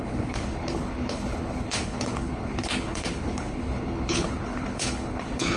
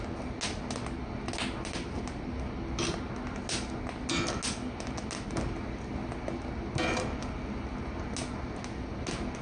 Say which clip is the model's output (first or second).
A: first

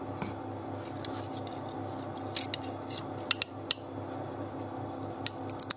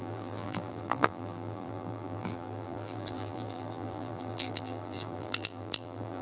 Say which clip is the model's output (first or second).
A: second